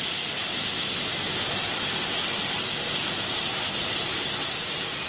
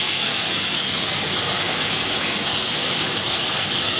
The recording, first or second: first